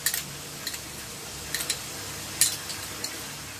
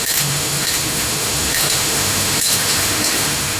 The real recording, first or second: first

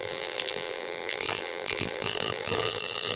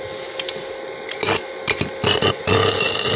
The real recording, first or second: second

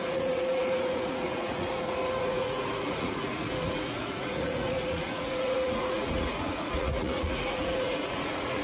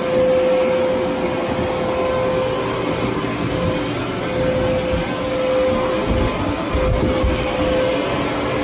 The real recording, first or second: second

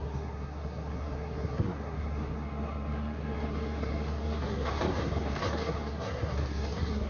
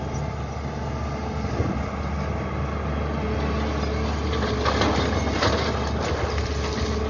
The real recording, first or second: second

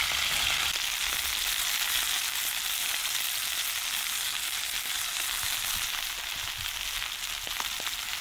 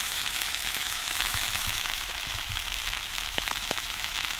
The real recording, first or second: first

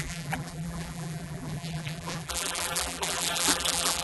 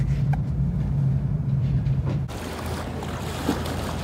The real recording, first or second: second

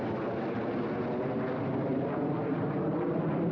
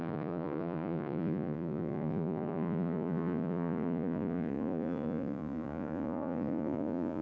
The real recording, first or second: first